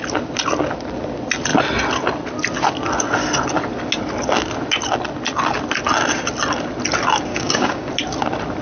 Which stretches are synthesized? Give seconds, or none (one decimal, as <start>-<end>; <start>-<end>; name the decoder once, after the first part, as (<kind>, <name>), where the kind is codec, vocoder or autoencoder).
7.3-7.9 (codec, DAC)